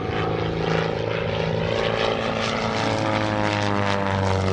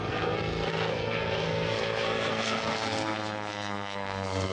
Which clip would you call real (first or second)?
first